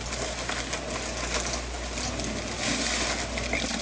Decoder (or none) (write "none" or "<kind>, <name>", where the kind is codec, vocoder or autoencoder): none